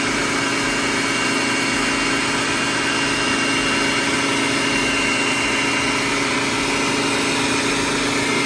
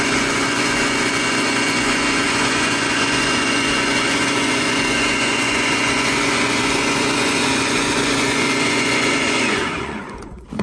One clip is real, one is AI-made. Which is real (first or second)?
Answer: first